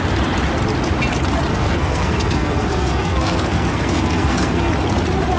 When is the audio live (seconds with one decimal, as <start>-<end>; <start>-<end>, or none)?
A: 0.0-1.5; 4.7-5.4